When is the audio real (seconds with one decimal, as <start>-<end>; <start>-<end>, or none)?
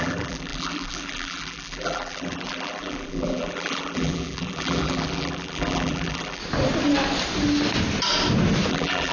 6.4-8.7